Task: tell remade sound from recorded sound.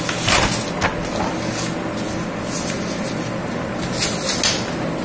recorded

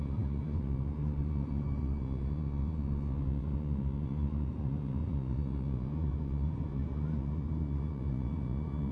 remade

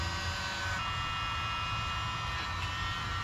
recorded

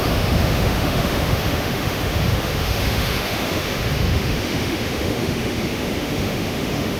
remade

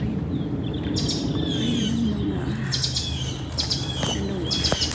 recorded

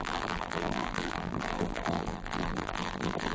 remade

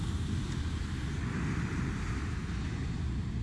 recorded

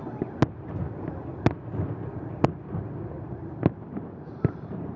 recorded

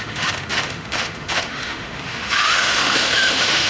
remade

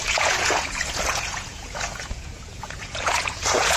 remade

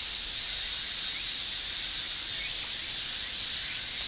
recorded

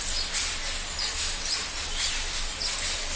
recorded